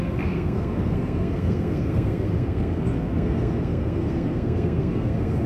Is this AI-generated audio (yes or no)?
yes